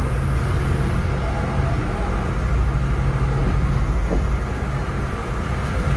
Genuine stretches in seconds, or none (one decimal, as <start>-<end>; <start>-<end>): 0.0-5.2